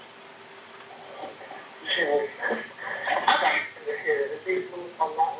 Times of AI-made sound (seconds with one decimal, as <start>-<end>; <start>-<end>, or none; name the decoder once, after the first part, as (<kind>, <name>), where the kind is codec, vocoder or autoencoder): none